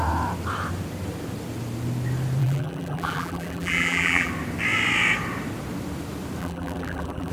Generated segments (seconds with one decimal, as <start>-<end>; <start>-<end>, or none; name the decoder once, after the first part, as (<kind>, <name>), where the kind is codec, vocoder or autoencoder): 2.4-4.3 (vocoder, BigVGAN v2); 6.4-7.3